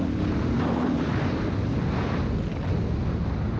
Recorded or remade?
recorded